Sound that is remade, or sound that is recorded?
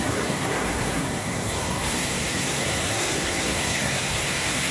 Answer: remade